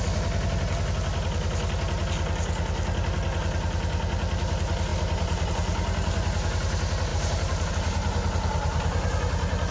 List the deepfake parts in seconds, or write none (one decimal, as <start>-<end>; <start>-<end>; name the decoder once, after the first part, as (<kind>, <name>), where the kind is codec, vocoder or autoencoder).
7.1-7.7 (vocoder, BigVGAN v2)